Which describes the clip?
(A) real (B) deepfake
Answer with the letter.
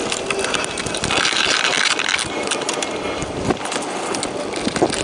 A